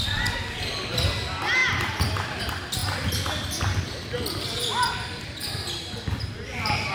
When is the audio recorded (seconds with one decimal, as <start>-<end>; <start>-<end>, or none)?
0.0-1.6; 2.4-6.9